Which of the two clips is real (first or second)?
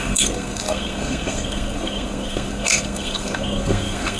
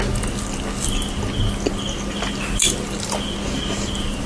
second